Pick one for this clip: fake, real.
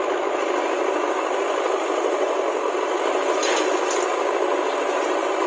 real